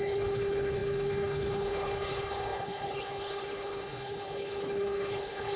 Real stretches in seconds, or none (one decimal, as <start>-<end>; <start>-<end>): none